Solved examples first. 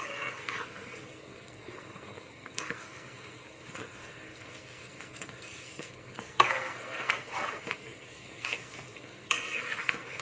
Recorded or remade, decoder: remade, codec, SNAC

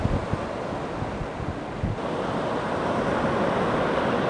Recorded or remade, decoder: recorded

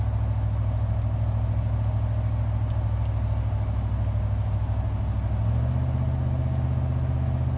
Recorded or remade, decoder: recorded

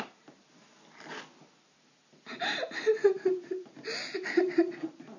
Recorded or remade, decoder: recorded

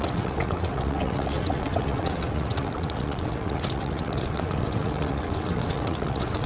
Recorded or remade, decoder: remade, vocoder, WaveNeXt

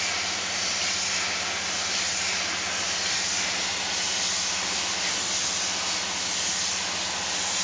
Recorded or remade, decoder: recorded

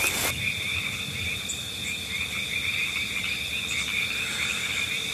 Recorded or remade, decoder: recorded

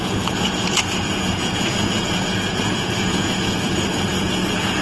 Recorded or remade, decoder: remade, vocoder, Vocos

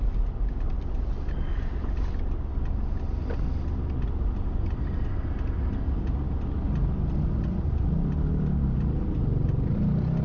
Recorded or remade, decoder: recorded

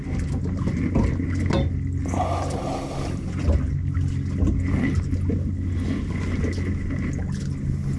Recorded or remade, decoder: recorded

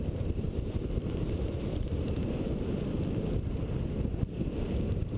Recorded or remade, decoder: remade, vocoder, BigVGAN v2